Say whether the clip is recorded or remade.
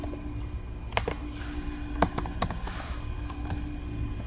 recorded